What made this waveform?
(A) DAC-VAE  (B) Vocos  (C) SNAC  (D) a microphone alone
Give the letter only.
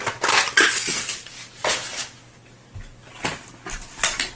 D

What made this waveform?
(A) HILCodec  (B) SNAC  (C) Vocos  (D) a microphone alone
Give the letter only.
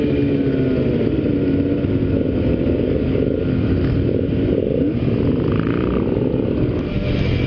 D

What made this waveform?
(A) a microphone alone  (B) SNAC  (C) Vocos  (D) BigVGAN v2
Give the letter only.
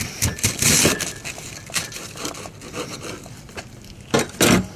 A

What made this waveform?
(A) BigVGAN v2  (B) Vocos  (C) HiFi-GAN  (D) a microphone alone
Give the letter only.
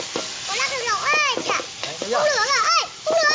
D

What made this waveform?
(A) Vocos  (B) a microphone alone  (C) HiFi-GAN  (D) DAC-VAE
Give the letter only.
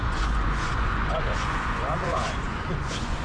A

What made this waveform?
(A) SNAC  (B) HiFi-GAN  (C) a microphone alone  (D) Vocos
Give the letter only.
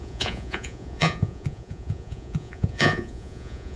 D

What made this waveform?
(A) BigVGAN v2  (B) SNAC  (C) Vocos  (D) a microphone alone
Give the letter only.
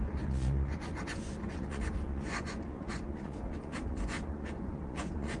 C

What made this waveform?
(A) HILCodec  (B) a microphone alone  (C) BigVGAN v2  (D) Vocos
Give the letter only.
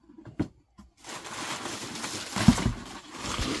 B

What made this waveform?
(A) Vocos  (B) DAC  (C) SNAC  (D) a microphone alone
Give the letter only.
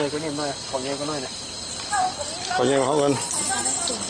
D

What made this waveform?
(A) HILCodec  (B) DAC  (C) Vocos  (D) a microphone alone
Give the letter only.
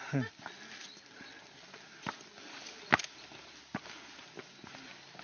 D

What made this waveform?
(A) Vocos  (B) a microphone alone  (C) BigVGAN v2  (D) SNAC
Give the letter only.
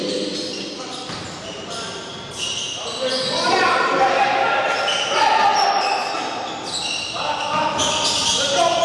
B